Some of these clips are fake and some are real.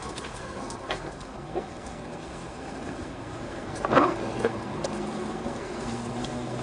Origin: fake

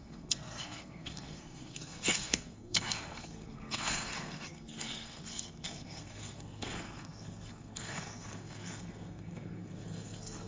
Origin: fake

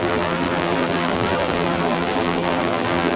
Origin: fake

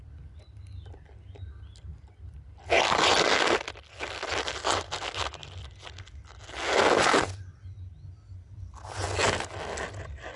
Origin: real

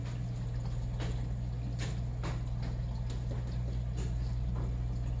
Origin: real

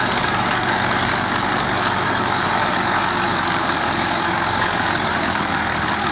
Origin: fake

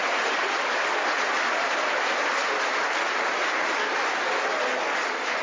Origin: real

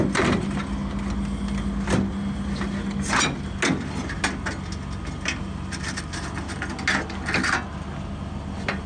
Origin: real